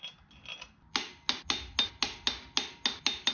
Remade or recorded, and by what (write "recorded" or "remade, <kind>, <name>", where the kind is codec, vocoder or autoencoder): recorded